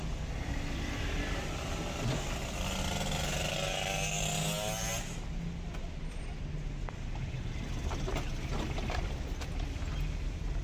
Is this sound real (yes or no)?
yes